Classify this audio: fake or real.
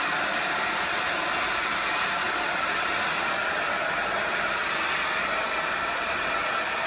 real